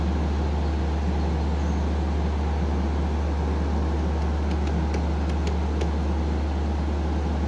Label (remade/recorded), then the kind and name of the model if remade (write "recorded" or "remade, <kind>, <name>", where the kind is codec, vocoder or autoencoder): recorded